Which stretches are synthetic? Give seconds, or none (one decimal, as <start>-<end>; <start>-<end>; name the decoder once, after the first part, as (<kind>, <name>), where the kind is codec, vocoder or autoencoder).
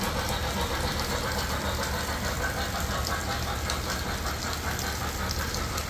none